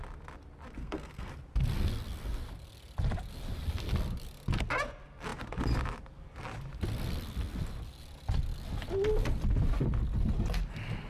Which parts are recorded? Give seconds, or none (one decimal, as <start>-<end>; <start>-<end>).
0.0-0.8; 1.3-11.1